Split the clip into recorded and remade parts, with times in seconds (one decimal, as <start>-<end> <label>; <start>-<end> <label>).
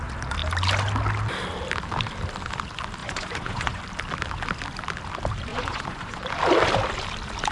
0.0-3.0 recorded; 3.0-3.8 remade; 3.8-5.5 recorded; 5.5-6.3 remade; 6.3-7.5 recorded